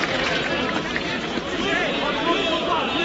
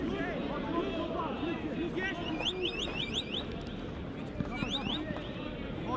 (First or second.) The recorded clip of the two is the second